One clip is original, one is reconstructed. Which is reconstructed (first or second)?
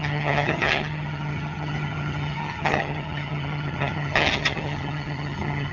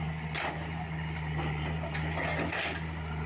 first